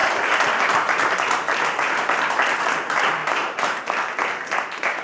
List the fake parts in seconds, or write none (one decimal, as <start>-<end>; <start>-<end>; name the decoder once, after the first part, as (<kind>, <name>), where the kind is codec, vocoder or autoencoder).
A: 3.2-3.8 (vocoder, BigVGAN v2)